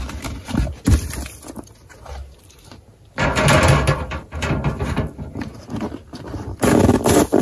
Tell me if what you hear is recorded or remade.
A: recorded